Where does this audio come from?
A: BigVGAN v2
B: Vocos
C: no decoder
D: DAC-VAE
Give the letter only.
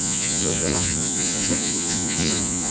B